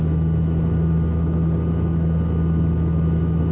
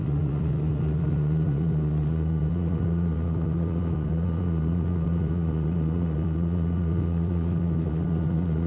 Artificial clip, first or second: second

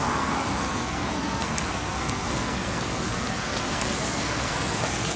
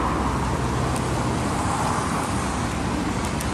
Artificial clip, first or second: first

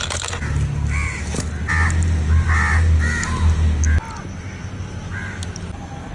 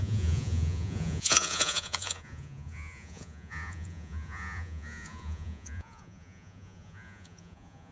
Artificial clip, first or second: second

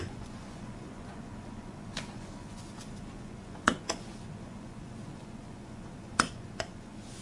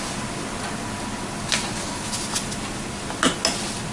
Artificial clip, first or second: first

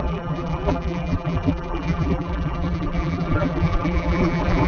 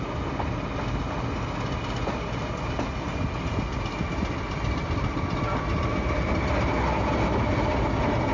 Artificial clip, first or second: first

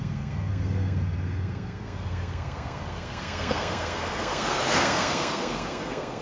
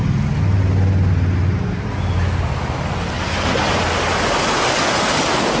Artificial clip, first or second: first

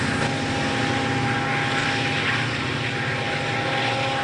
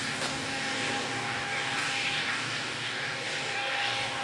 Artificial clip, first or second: second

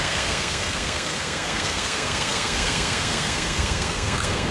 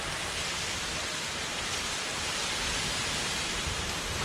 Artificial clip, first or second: first